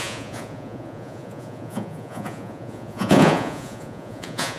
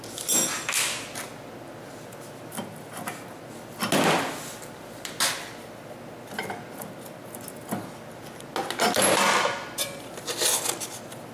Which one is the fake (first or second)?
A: first